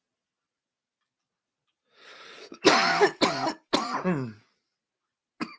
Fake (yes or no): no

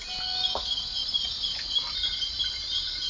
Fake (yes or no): no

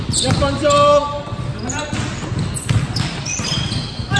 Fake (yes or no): no